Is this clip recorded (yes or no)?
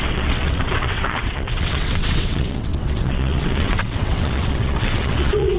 no